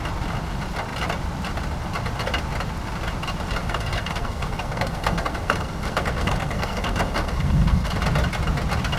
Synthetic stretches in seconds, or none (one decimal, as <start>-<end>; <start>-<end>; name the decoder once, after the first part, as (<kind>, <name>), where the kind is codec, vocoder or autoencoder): 3.6-7.9 (codec, SNAC)